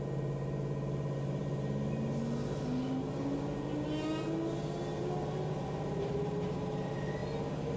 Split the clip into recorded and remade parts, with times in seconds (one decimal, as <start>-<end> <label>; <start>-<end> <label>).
0.0-7.8 recorded

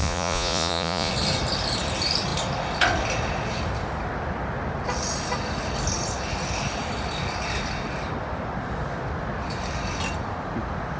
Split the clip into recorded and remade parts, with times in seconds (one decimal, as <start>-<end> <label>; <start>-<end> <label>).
0.0-1.1 remade; 1.1-11.0 recorded

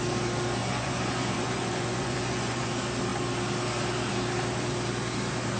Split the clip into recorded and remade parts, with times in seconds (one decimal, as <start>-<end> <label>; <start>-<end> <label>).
0.0-0.6 recorded; 0.6-2.7 remade; 2.7-5.6 recorded

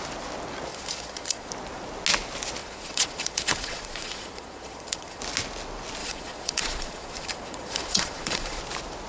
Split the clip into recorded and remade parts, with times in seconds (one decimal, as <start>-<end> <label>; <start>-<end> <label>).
0.0-0.7 recorded; 0.7-1.5 remade; 1.5-2.6 recorded; 2.6-5.2 remade; 5.2-6.0 recorded; 6.0-8.6 remade; 8.6-9.1 recorded

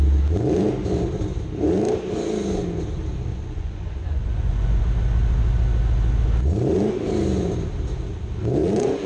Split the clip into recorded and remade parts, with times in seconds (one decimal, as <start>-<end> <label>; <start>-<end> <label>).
0.0-3.3 recorded; 3.3-4.8 remade; 4.8-8.6 recorded; 8.6-9.1 remade

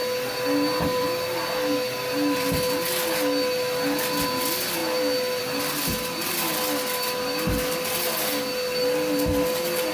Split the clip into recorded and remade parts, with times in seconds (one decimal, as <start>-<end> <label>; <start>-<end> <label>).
0.0-9.9 recorded

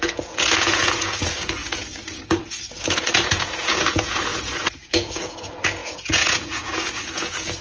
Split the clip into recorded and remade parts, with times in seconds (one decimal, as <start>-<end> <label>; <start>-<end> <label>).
0.0-7.6 remade